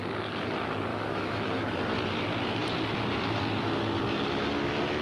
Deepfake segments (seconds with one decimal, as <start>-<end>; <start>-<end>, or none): 0.9-1.7